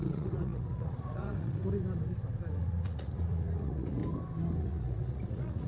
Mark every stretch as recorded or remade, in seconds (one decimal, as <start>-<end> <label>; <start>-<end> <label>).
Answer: 0.0-1.6 remade; 1.6-2.5 recorded; 2.5-4.0 remade; 4.0-4.6 recorded; 4.6-5.7 remade